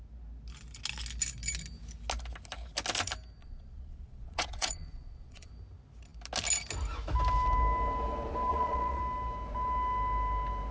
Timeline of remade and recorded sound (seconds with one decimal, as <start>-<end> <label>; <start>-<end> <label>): 0.0-3.4 recorded; 3.4-5.5 remade; 5.5-8.5 recorded; 8.5-9.0 remade; 9.0-10.7 recorded